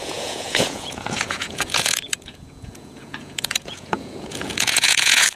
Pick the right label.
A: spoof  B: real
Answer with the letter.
A